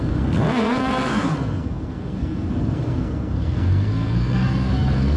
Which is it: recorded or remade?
remade